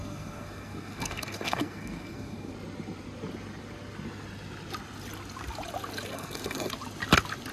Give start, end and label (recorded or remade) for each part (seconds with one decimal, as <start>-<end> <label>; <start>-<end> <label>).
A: 0.0-2.5 remade; 2.5-6.1 recorded; 6.1-6.7 remade; 6.7-7.5 recorded